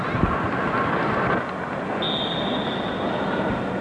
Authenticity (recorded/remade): recorded